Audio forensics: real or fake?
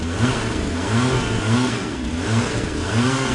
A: fake